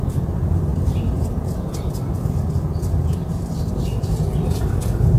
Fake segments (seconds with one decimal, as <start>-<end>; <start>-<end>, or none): none